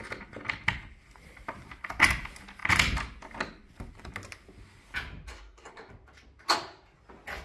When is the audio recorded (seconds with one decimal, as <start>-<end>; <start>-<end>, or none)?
0.0-5.3; 5.9-7.4